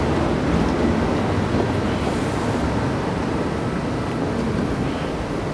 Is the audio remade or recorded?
recorded